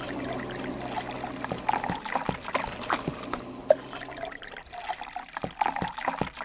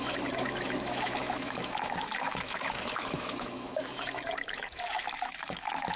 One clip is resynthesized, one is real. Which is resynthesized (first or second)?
second